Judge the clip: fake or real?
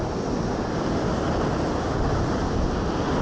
real